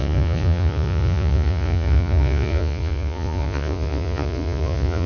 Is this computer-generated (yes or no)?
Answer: yes